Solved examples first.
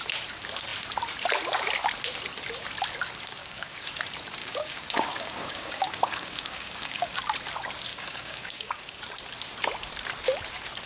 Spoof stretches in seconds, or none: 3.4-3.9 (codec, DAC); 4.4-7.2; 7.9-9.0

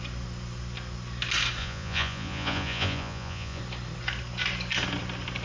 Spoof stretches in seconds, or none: 1.6-3.6 (vocoder, Vocos)

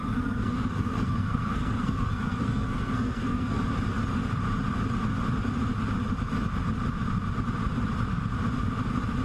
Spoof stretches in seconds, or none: 0.0-3.6 (codec, SNAC)